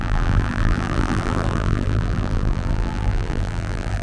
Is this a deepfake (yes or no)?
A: yes